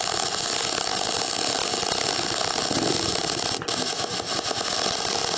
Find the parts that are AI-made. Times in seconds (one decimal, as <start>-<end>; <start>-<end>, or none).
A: none